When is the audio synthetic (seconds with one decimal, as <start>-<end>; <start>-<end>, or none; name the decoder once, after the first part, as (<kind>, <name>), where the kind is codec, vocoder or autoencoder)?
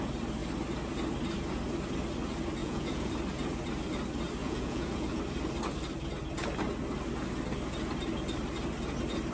2.6-3.1 (vocoder, Vocos); 4.4-5.2